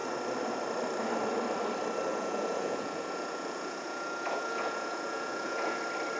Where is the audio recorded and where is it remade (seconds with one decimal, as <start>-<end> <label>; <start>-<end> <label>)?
0.0-2.1 recorded; 2.1-5.8 remade; 5.8-6.2 recorded

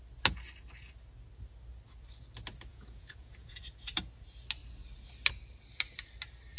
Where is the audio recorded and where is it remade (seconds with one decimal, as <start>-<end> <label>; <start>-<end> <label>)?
0.0-2.7 recorded; 2.7-3.6 remade; 3.6-6.6 recorded

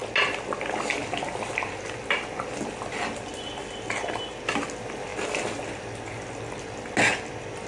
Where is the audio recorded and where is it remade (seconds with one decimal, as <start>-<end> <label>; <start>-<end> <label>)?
0.0-7.7 recorded

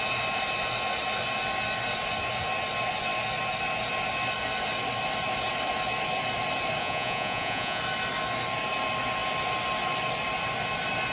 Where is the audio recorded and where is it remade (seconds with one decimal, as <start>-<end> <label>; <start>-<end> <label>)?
0.0-6.8 recorded; 6.8-7.8 remade; 7.8-11.1 recorded

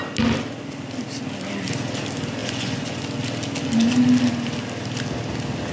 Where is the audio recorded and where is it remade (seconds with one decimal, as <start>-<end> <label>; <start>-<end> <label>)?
0.0-2.4 recorded; 2.4-3.0 remade; 3.0-5.7 recorded

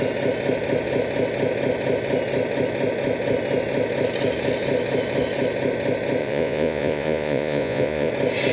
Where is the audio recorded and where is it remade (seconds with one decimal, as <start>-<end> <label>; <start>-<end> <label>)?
0.0-6.2 recorded; 6.2-8.1 remade; 8.1-8.5 recorded

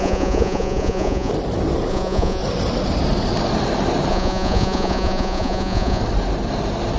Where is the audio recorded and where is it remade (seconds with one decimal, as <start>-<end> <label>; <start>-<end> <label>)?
0.0-1.3 remade; 1.3-1.9 recorded; 1.9-2.4 remade; 2.4-4.1 recorded; 4.1-6.0 remade; 6.0-7.0 recorded